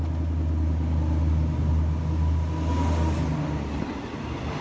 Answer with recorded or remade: recorded